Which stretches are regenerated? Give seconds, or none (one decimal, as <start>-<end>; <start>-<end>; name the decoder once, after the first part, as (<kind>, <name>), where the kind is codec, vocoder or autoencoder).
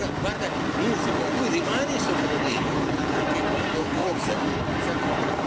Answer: 2.4-3.2 (codec, HILCodec); 3.8-4.3